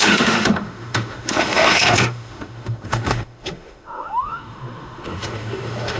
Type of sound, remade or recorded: remade